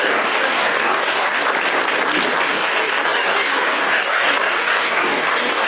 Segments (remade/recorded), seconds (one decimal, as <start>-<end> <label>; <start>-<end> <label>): 0.0-1.4 remade; 1.4-2.5 recorded; 2.5-5.7 remade